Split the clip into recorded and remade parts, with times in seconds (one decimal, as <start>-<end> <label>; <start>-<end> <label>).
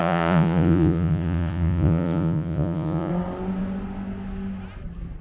0.0-3.1 remade; 3.1-5.2 recorded